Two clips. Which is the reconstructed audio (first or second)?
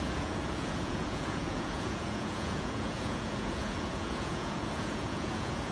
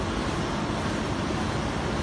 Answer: first